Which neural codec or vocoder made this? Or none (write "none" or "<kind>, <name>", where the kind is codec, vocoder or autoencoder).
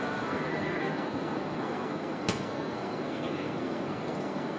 codec, SNAC